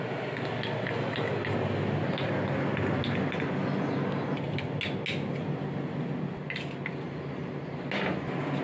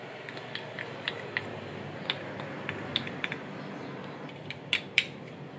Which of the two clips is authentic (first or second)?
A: first